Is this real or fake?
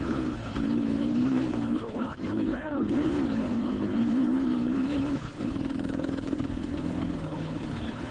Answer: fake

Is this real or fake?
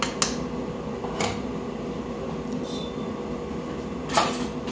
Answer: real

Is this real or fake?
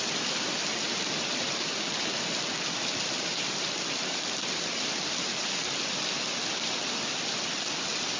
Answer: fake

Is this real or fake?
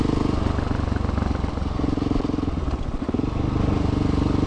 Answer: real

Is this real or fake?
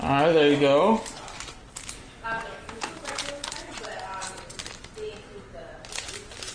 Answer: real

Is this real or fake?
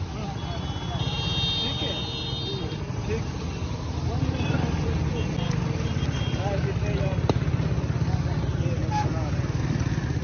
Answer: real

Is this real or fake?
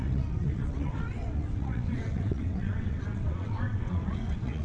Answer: fake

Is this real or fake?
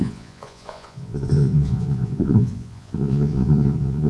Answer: fake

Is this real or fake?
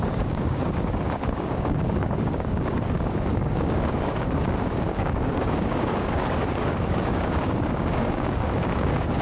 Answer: fake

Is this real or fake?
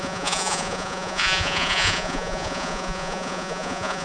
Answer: fake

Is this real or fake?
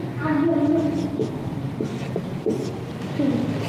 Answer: real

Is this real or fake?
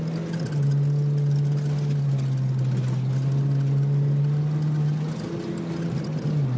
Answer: real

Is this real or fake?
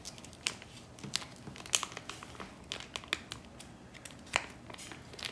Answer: real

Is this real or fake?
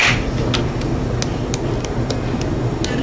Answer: real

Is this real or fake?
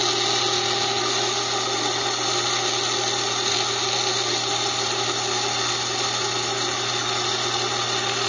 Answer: real